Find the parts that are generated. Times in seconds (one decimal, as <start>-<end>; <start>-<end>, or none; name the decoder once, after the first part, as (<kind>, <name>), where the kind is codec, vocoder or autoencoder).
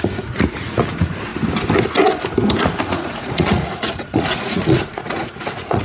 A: 0.0-1.3 (vocoder, Vocos); 2.9-5.8